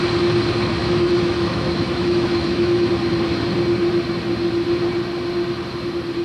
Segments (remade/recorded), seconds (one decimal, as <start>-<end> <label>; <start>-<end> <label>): 0.0-0.8 recorded; 0.8-2.9 remade; 2.9-6.2 recorded